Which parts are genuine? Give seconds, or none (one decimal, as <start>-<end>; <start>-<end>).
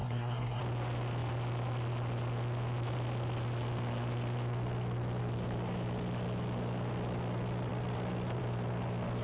0.6-9.2